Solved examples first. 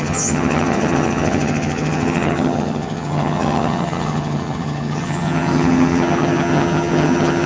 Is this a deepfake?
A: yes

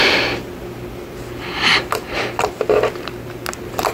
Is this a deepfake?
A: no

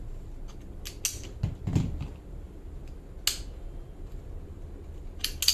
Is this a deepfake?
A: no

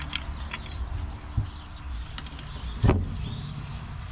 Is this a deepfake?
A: no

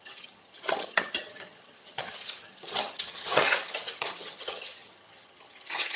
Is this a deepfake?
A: yes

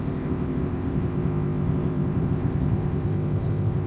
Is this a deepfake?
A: yes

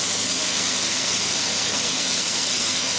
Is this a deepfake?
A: yes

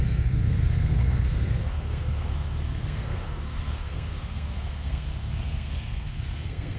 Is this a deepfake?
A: yes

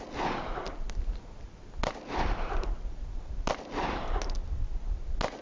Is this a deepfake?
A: no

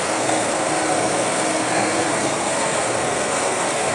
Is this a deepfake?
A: yes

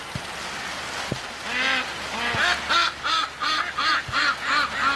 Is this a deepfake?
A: no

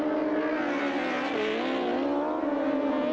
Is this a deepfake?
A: no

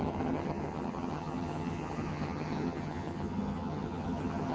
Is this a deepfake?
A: yes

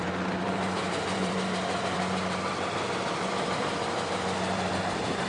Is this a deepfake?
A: yes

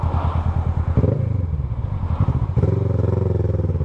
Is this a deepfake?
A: no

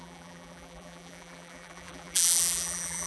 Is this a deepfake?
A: yes